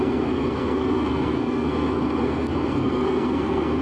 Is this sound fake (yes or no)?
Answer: yes